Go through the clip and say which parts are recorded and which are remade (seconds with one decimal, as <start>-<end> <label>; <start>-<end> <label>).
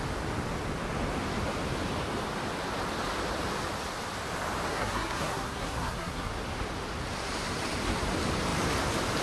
0.0-4.7 recorded; 4.7-6.3 remade; 6.3-9.2 recorded